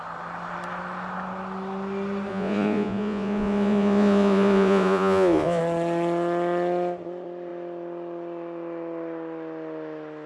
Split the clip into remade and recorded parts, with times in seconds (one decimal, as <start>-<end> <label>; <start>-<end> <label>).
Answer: 0.0-2.3 recorded; 2.3-5.6 remade; 5.6-10.3 recorded